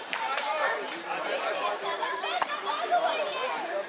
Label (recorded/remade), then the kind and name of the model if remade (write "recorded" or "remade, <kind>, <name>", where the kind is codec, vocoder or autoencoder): remade, vocoder, BigVGAN v2